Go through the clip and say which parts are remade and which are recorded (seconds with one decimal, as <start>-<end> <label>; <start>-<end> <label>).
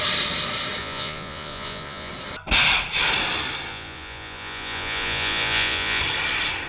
0.0-0.8 recorded; 0.8-2.1 remade; 2.1-3.7 recorded; 3.7-6.0 remade; 6.0-6.7 recorded